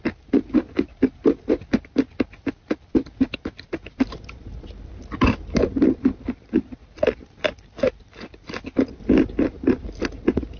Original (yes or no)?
yes